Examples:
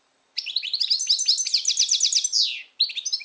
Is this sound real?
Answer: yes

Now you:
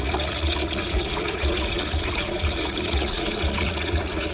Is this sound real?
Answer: no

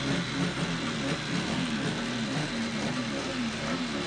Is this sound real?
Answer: yes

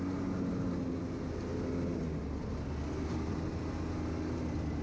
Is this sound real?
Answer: yes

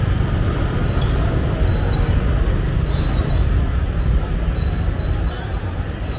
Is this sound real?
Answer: yes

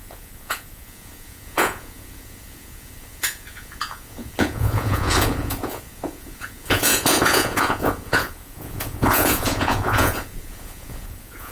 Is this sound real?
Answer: no